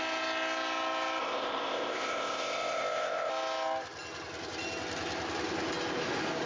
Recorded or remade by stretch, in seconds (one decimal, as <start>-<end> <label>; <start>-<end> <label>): 0.0-1.2 recorded; 1.2-3.3 remade; 3.3-6.5 recorded